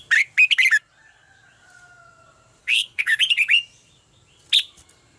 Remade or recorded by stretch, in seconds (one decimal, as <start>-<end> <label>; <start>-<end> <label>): 0.0-2.6 recorded; 2.6-3.2 remade; 3.2-5.2 recorded